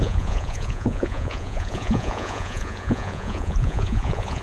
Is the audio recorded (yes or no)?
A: no